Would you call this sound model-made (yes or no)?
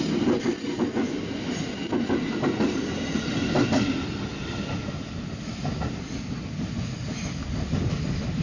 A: no